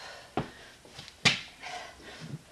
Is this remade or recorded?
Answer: recorded